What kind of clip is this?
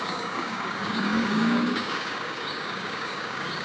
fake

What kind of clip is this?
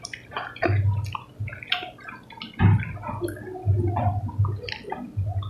real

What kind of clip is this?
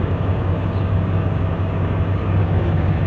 fake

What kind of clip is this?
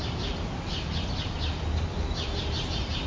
real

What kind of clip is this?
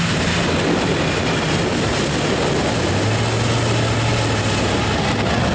real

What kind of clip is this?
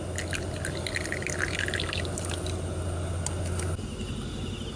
real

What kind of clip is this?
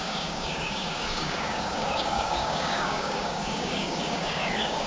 fake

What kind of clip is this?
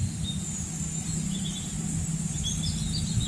real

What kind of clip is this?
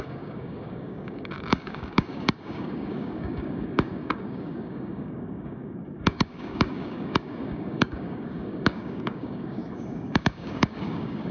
fake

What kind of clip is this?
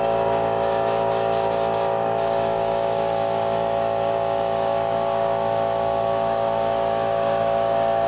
fake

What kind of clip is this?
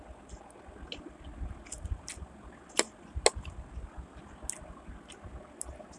real